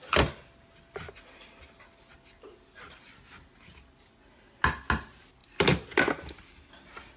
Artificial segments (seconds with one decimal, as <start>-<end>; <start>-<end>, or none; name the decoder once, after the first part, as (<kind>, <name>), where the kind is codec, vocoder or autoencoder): none